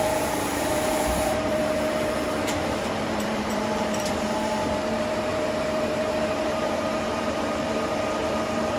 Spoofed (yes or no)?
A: yes